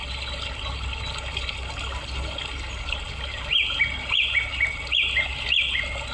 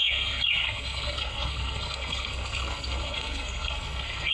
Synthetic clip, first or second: second